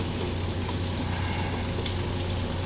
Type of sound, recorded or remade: recorded